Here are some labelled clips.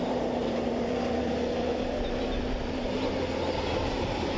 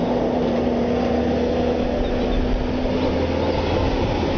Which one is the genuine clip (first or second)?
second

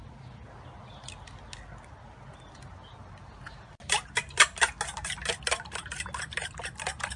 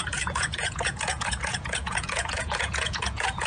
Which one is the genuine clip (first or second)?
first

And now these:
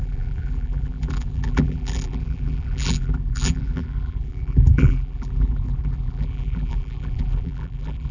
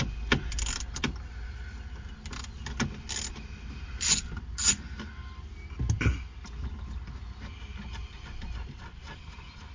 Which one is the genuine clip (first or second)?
second